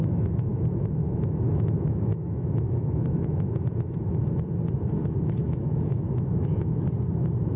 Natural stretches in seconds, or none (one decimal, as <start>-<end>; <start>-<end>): 0.0-0.5; 3.7-5.0; 6.8-7.6